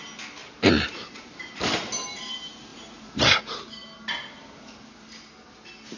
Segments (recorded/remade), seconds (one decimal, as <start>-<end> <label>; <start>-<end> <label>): 0.0-0.4 recorded; 0.4-2.2 remade; 2.2-2.7 recorded; 2.7-3.4 remade; 3.4-6.0 recorded